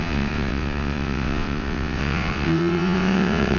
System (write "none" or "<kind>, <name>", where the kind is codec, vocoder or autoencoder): vocoder, WaveNeXt